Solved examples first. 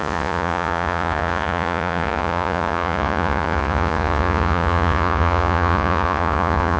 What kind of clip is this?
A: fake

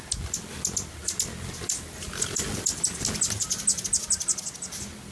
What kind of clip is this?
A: real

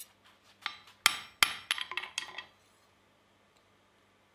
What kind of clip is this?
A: real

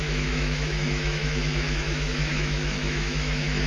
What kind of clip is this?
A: fake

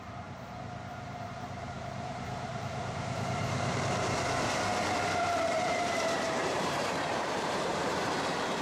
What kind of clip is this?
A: fake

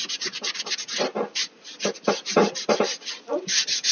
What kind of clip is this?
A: real